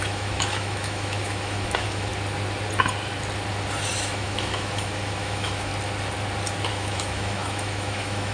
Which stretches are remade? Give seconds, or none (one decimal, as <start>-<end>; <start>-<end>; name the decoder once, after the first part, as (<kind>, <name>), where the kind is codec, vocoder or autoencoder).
0.0-2.1 (autoencoder, DAC-VAE); 3.9-5.7; 6.7-8.3